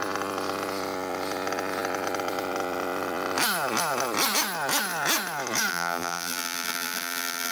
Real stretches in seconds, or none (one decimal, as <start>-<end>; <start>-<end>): 0.0-5.7